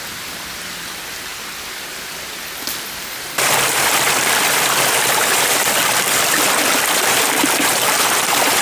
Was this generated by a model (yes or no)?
yes